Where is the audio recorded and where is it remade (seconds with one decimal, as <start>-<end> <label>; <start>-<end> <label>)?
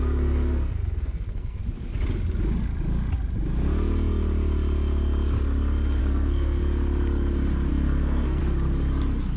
0.0-1.6 remade; 1.6-6.0 recorded; 6.0-6.6 remade; 6.6-7.7 recorded; 7.7-8.4 remade; 8.4-9.4 recorded